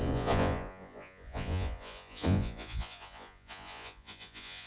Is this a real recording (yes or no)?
no